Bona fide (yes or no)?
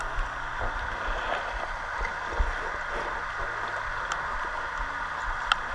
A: yes